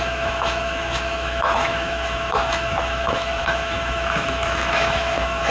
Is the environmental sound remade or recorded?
remade